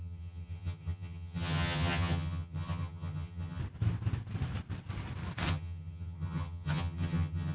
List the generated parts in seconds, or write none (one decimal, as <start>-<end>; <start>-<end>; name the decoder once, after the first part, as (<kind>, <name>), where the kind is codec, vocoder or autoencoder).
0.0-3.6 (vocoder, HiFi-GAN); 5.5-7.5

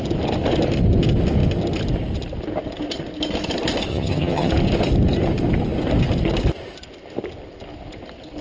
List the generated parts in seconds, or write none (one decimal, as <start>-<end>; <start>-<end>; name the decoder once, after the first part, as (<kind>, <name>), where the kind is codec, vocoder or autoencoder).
3.9-4.5 (vocoder, HiFi-GAN)

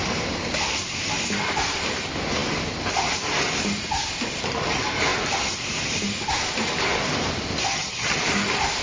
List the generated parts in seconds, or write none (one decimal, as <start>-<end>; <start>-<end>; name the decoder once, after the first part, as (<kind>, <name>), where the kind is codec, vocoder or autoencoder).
7.7-8.2 (vocoder, HiFi-GAN)